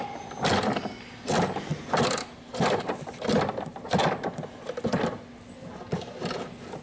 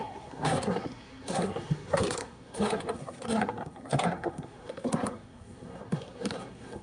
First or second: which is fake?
second